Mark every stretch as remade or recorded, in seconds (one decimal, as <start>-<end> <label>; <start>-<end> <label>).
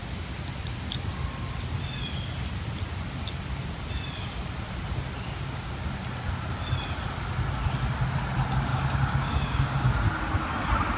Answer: 0.0-8.7 recorded; 8.7-10.1 remade; 10.1-11.0 recorded